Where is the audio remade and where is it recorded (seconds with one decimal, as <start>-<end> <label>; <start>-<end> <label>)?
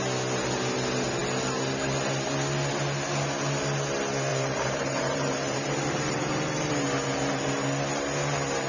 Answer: 0.0-4.3 recorded; 4.3-6.7 remade; 6.7-8.7 recorded